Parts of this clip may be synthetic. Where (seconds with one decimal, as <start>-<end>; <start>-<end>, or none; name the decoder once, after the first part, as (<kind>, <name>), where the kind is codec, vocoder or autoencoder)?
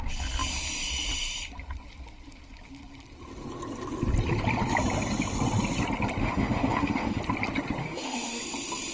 6.2-7.2 (autoencoder, DAC-VAE); 7.8-8.4